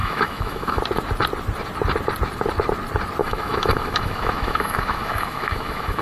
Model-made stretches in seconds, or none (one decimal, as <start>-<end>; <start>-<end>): 0.0-0.8; 3.2-6.0